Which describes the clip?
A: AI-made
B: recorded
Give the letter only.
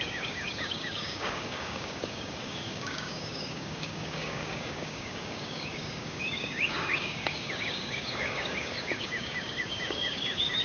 A